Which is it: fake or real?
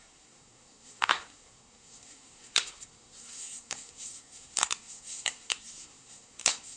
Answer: fake